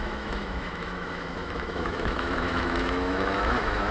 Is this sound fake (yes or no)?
yes